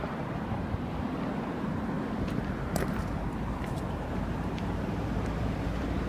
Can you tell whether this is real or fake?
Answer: fake